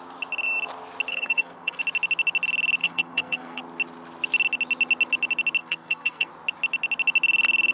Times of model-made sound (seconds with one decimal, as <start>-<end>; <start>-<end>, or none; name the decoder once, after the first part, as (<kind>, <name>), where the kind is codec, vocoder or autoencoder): 1.1-1.8 (codec, SNAC); 2.8-3.6; 5.6-6.3